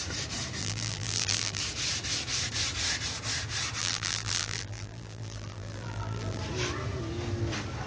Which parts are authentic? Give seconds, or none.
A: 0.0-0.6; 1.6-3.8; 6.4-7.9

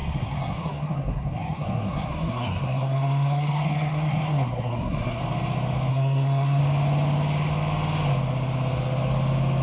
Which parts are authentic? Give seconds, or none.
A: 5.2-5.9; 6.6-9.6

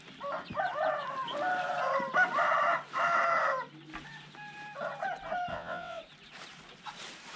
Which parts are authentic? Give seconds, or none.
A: 0.0-5.5; 6.0-7.4

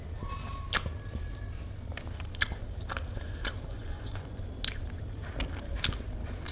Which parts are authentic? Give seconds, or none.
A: 0.0-3.7; 4.5-6.5

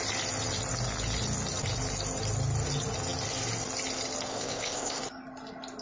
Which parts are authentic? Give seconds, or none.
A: 0.0-4.3; 5.0-5.8

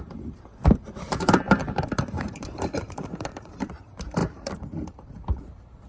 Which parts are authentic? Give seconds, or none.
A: none